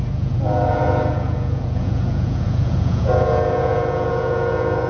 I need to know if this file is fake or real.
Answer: fake